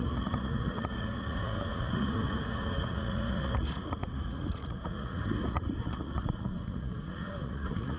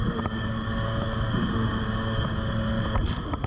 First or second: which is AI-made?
first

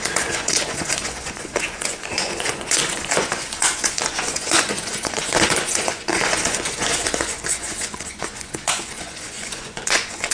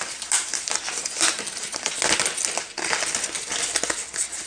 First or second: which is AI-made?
first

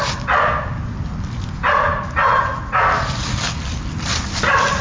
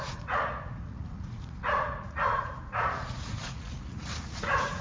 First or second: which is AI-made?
second